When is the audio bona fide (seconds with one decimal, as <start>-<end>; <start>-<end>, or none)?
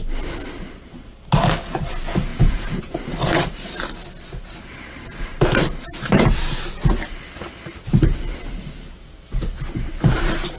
0.0-2.3; 2.8-10.6